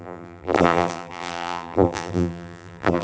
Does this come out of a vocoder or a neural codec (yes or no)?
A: yes